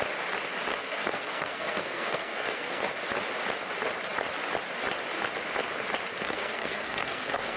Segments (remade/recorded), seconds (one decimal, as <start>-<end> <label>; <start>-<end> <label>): 0.0-0.7 recorded; 0.7-2.9 remade; 2.9-6.1 recorded; 6.1-7.6 remade